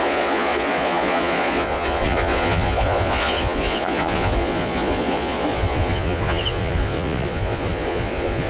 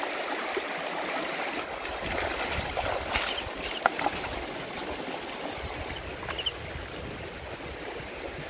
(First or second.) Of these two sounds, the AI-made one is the first